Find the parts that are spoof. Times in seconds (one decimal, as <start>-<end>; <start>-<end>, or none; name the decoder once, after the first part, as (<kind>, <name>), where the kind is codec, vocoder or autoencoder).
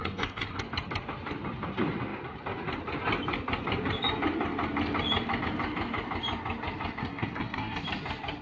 0.0-0.6 (codec, SNAC); 7.0-7.8